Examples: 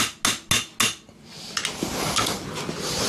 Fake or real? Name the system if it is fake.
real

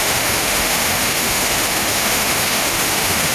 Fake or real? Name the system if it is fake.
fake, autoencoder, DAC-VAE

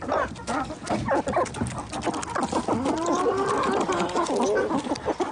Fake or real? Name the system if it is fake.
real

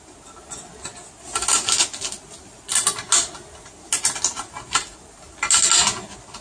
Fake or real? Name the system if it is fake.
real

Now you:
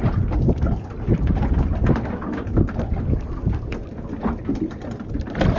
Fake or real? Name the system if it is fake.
real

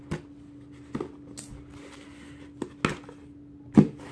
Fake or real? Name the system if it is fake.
real